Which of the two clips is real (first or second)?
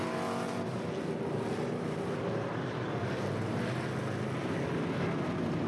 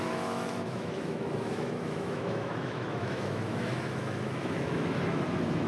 first